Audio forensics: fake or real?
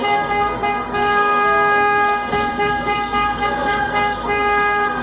fake